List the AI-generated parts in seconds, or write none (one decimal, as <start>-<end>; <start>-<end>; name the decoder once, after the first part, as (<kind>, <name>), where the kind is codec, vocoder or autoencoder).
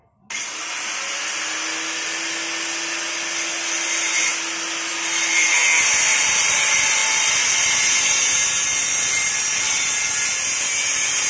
none